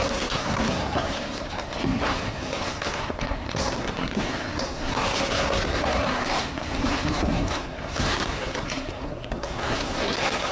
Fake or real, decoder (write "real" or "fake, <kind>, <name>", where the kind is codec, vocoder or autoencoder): fake, codec, SNAC